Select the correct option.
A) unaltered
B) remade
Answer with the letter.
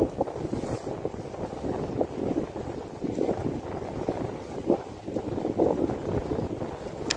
A